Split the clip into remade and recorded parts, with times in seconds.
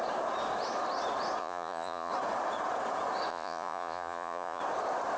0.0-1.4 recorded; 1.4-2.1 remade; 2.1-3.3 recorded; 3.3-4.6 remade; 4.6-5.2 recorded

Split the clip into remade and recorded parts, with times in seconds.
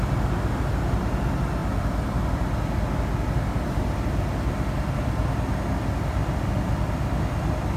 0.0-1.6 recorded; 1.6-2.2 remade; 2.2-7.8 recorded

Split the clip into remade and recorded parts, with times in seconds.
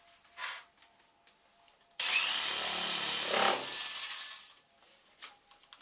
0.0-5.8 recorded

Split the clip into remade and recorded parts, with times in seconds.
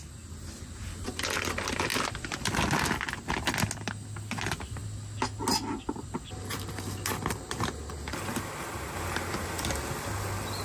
0.0-10.6 recorded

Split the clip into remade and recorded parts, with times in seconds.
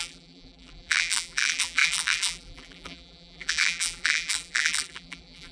0.0-5.5 remade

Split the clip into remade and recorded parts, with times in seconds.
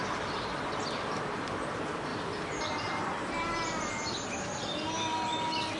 0.0-2.1 recorded; 2.1-5.8 remade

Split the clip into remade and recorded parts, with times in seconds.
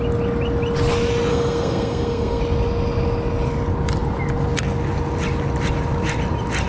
0.0-1.3 recorded; 1.3-2.4 remade; 2.4-6.7 recorded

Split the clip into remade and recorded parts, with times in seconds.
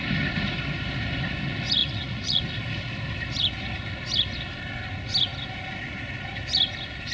0.0-1.8 recorded; 1.8-2.4 remade; 2.4-7.1 recorded